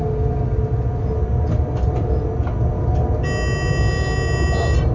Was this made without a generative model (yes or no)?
yes